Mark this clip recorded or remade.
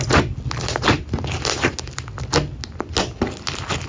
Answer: recorded